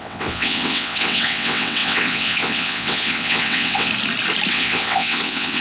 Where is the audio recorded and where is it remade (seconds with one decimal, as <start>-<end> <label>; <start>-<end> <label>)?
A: 0.0-3.9 remade; 3.9-4.5 recorded; 4.5-5.6 remade